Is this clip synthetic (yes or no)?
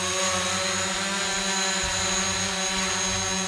no